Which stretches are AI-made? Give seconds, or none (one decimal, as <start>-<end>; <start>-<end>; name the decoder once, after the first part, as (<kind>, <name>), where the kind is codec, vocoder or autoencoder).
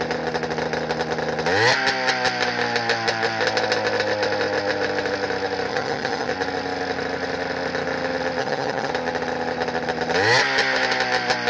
5.7-6.3 (vocoder, HiFi-GAN); 8.4-8.9